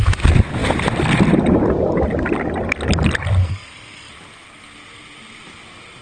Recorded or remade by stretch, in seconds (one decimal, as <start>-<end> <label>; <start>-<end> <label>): 0.0-3.4 recorded; 3.4-4.1 remade; 4.1-6.0 recorded